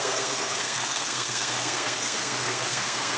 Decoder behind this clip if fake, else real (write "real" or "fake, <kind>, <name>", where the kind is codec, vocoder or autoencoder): fake, codec, SNAC